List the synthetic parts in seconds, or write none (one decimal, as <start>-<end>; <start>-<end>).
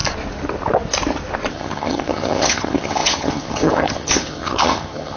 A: 1.5-5.2